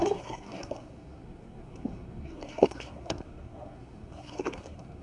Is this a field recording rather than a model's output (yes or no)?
no